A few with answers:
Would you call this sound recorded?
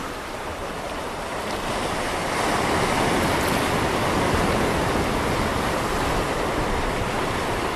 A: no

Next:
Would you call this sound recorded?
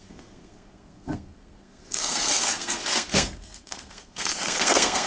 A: no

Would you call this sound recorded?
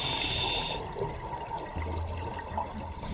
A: yes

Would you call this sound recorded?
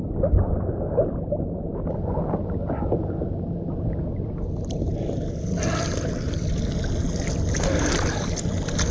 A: yes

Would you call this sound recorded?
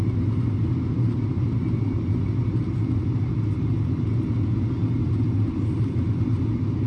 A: yes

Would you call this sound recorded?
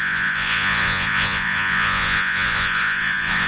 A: no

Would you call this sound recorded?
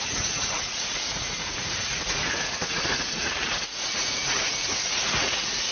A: no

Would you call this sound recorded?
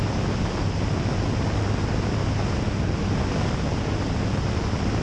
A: yes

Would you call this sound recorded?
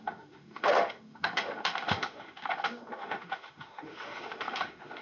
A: no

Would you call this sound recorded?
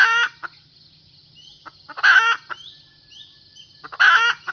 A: yes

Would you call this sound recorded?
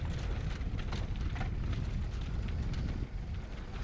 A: yes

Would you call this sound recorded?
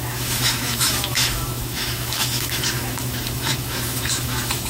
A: no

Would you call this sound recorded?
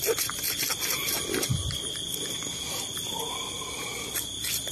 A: yes